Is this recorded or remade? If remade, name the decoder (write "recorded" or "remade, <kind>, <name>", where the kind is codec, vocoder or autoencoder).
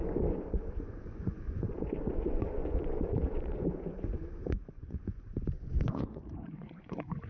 remade, vocoder, Vocos